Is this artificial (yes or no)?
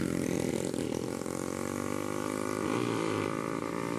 no